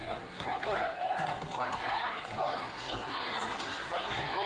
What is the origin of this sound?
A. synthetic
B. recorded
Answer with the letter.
A